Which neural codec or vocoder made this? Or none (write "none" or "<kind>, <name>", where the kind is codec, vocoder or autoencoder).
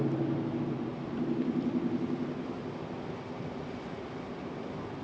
none